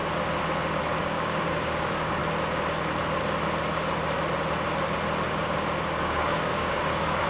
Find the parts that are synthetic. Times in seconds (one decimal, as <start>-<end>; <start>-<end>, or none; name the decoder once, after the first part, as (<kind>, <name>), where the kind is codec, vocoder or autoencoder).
1.0-2.2 (codec, DAC); 6.0-7.3